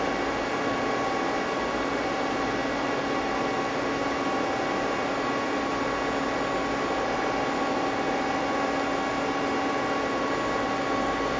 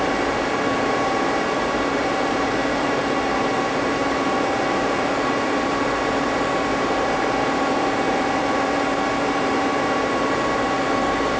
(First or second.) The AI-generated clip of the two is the second